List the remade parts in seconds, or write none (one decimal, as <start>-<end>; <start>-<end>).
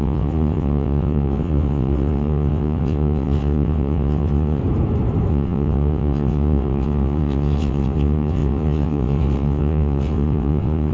0.0-4.6; 5.3-10.9